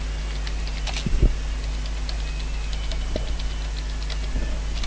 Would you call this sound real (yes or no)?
yes